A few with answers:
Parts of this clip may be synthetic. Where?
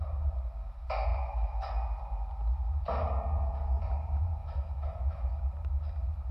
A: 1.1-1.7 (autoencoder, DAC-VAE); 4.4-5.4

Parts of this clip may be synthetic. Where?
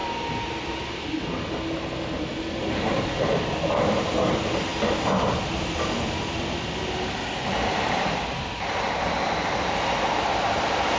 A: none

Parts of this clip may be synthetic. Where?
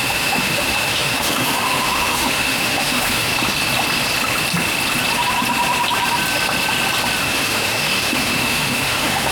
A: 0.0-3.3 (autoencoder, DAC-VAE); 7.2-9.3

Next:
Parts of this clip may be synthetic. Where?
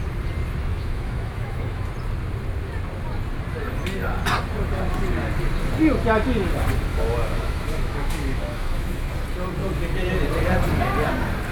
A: 0.7-1.9 (autoencoder, DAC-VAE); 6.9-9.1